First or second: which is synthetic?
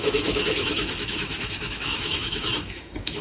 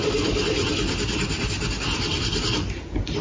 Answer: first